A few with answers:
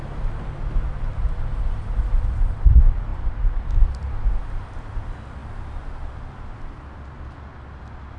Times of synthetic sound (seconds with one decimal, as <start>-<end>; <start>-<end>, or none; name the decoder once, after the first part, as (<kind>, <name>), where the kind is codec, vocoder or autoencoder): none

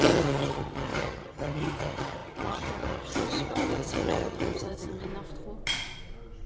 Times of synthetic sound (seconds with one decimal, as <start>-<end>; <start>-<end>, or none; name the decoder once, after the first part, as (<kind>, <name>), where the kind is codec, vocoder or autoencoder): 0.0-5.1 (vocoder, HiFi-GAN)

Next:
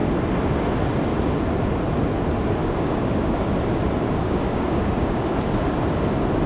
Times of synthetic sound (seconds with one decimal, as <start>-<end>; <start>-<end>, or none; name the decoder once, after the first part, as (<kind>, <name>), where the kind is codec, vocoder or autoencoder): 2.6-3.4 (codec, DAC); 4.0-5.2

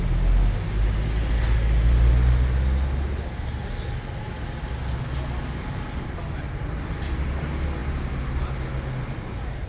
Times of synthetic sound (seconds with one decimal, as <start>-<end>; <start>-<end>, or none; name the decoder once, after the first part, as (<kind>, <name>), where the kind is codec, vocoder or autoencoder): none